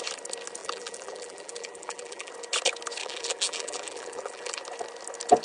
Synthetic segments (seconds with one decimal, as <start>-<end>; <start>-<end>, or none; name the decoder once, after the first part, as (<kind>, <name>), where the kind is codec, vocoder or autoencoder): 0.6-2.3 (vocoder, BigVGAN v2); 3.0-4.6